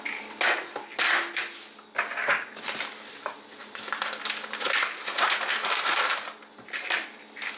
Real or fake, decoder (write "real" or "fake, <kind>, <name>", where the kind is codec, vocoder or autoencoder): real